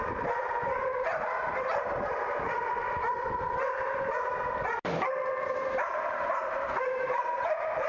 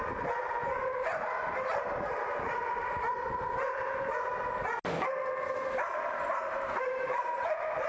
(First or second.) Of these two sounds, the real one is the second